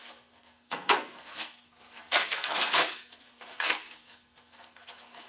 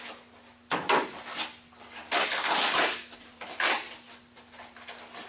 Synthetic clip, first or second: first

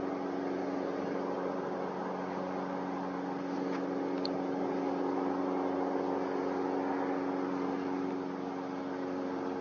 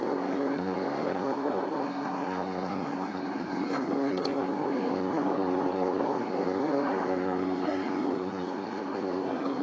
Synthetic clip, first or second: second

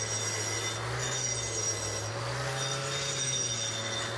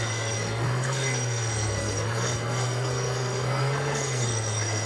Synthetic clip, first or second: second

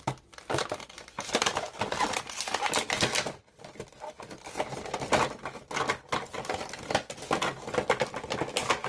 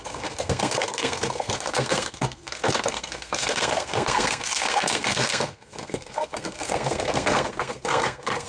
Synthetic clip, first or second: second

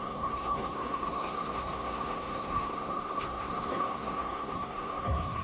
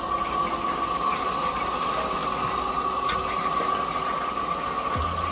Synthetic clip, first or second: first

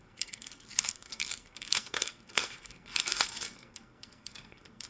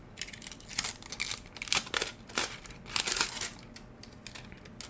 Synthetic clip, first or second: first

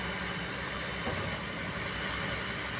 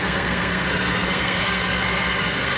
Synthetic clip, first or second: second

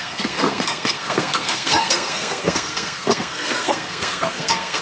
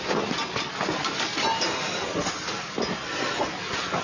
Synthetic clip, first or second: first